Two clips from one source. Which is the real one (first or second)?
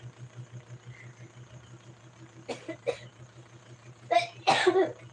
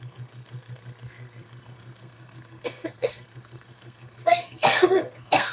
first